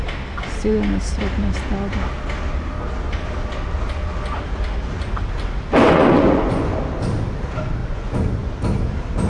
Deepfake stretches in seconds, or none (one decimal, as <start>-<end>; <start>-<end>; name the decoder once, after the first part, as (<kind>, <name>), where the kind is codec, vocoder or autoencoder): 5.8-6.8 (vocoder, Vocos); 7.8-8.5

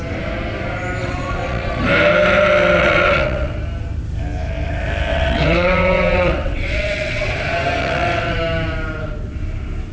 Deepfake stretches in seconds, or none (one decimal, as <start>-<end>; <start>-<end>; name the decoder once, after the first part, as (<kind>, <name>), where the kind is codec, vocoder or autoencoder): 1.0-1.8 (vocoder, WaveNeXt); 2.8-3.5; 5.1-7.3; 7.8-8.4